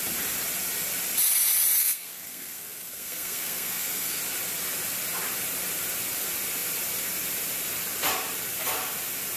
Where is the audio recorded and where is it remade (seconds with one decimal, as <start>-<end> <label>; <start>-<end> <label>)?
0.0-1.8 recorded; 1.8-4.2 remade; 4.2-9.4 recorded